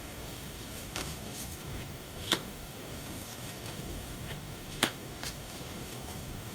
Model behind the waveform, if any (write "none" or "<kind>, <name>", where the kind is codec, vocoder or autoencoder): codec, DAC